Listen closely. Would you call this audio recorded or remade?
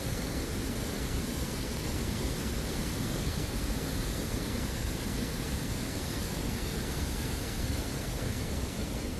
remade